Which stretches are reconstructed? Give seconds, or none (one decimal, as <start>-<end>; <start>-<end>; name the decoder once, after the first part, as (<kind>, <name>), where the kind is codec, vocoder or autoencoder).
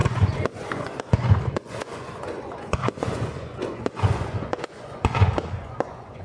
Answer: 0.0-6.2 (vocoder, Vocos)